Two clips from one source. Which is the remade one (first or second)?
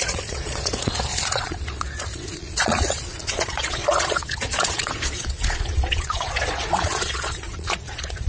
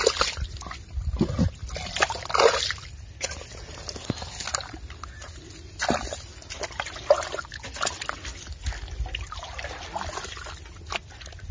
first